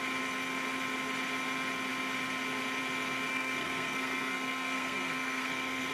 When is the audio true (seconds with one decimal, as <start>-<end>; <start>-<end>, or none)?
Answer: 0.0-3.3